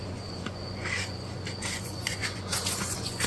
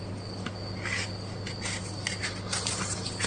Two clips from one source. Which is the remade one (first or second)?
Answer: first